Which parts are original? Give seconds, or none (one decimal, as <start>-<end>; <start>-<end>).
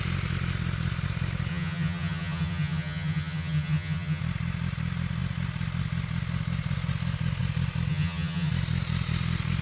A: 0.0-1.5; 4.2-7.9; 8.5-9.6